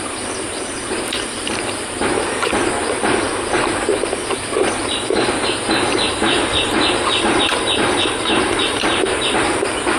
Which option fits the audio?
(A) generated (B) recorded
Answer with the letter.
A